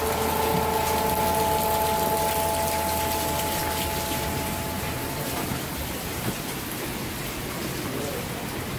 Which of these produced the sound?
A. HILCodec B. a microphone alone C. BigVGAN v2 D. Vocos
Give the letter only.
B